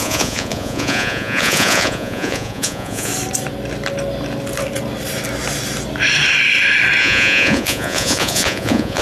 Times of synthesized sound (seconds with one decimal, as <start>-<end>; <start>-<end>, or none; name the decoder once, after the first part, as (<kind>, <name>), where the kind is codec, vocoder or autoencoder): 0.0-3.1 (vocoder, Vocos); 7.0-9.0